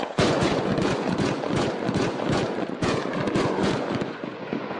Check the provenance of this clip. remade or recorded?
remade